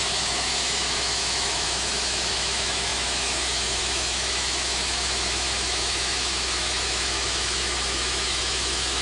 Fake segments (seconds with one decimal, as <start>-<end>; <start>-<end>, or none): 0.0-9.0